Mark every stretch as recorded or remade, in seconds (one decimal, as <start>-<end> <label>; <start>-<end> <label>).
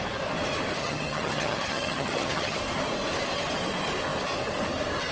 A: 0.0-0.8 recorded; 0.8-2.6 remade; 2.6-5.1 recorded